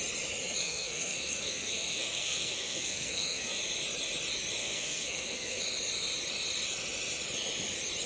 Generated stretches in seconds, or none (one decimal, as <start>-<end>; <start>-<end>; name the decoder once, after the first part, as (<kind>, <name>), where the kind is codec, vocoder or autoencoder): 0.6-3.6 (codec, SNAC); 4.6-5.6